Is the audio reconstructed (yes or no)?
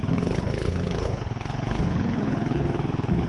yes